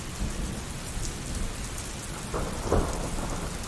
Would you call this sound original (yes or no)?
yes